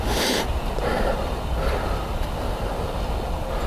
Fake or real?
real